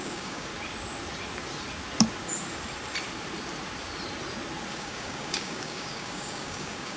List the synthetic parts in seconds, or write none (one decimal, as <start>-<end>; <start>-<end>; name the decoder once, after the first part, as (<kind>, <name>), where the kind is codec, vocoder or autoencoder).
0.0-0.5 (codec, DAC); 4.7-7.0